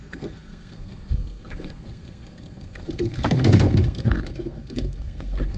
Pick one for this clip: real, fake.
fake